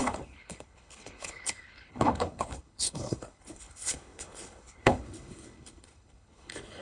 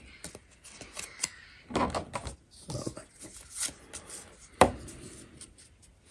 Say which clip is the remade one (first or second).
first